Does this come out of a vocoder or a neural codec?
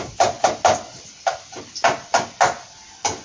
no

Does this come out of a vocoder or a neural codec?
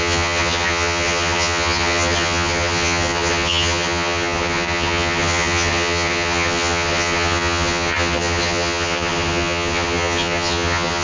yes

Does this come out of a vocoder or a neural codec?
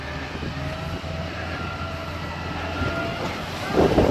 no